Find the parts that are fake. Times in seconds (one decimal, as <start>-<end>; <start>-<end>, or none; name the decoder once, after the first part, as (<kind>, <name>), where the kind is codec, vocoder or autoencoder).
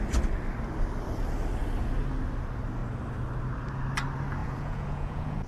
4.4-5.5 (vocoder, Vocos)